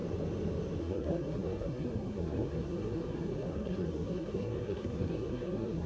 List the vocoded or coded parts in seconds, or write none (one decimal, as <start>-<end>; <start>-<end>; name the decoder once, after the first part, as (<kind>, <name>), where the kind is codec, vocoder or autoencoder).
0.8-5.9 (codec, SNAC)